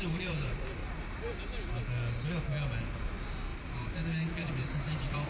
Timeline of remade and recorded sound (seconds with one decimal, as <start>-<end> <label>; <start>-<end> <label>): 0.0-0.8 remade; 0.8-3.0 recorded; 3.0-5.3 remade